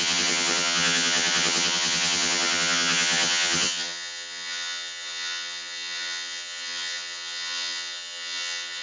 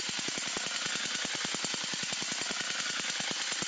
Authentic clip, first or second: second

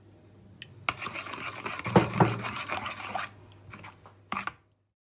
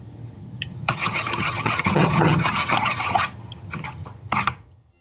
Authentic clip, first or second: first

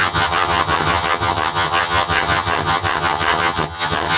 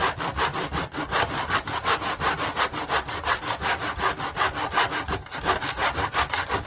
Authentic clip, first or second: second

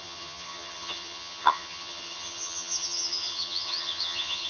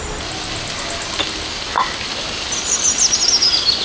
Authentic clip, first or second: second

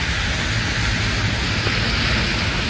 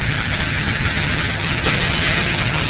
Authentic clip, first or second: first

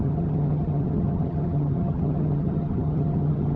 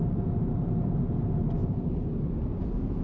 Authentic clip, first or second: second